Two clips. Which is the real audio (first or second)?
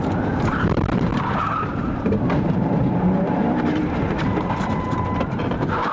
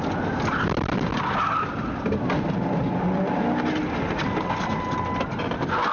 second